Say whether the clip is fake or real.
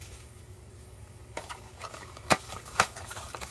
fake